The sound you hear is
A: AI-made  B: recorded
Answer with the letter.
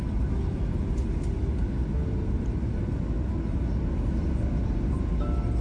B